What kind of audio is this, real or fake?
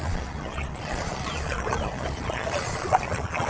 fake